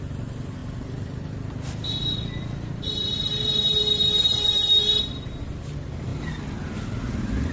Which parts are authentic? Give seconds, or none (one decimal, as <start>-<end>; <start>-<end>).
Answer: 0.0-7.5